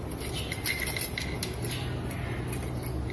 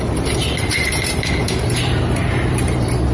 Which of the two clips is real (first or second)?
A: first